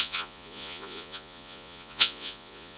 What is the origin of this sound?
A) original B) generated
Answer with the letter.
B